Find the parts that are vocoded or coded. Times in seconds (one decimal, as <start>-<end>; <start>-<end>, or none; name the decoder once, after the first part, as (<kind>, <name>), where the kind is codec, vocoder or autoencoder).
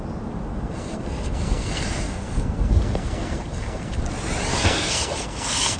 0.5-4.0 (codec, SNAC); 4.5-5.8